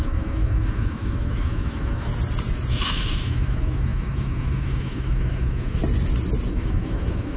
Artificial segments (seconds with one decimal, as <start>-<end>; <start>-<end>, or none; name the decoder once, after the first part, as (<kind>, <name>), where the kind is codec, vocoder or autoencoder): 0.0-2.1 (autoencoder, DAC-VAE); 2.7-5.8; 6.5-7.4